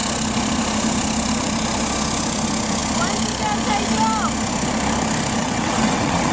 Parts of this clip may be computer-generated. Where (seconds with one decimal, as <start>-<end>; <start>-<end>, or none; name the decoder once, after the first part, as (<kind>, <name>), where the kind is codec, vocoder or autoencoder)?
5.4-6.3 (vocoder, WaveNeXt)